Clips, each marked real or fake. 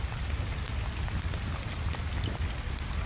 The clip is real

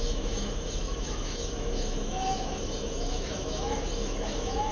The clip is fake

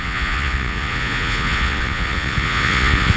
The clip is fake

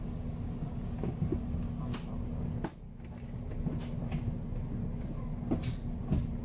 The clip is real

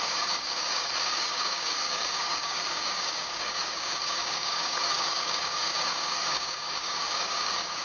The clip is fake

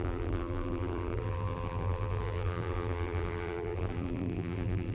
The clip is fake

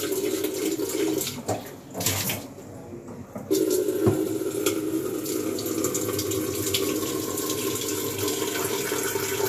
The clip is real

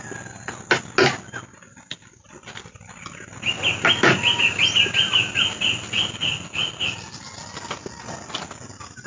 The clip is real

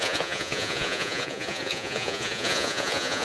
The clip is fake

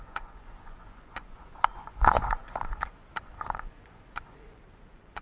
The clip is fake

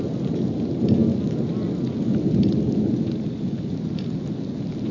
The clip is real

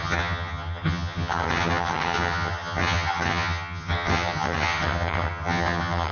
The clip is fake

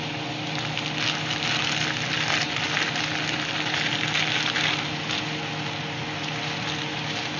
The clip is real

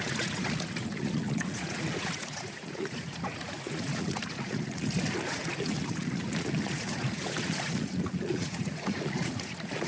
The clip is fake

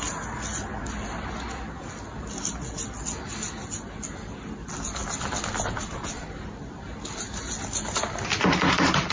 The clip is real